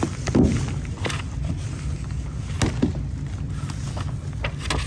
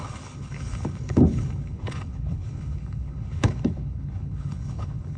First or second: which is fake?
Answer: second